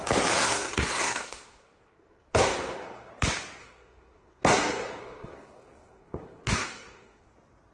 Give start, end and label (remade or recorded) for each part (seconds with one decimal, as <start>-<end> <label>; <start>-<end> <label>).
0.0-0.4 recorded; 0.4-3.1 remade; 3.1-3.6 recorded; 3.6-7.3 remade; 7.3-7.7 recorded